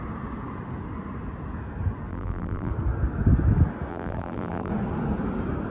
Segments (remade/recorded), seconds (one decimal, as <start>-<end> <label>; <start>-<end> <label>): 0.0-2.1 recorded; 2.1-2.7 remade; 2.7-3.9 recorded; 3.9-4.7 remade; 4.7-5.7 recorded